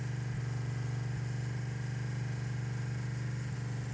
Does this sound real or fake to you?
real